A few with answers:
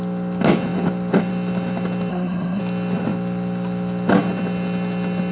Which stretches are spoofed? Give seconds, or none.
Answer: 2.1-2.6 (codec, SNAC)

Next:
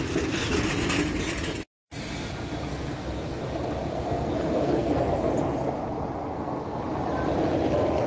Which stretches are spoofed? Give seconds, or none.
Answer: 2.7-3.4 (codec, SNAC); 3.9-5.3; 6.2-6.8

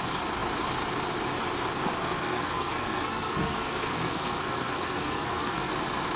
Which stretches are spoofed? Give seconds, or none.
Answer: 2.0-5.7 (codec, SNAC)

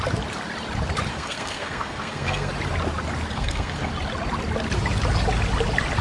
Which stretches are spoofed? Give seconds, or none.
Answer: 1.1-2.5 (codec, SNAC); 3.3-3.9